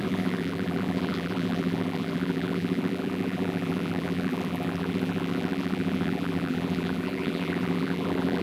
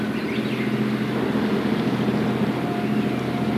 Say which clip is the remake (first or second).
first